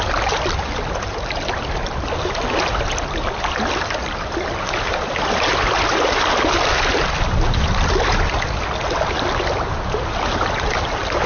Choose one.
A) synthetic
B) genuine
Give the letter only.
B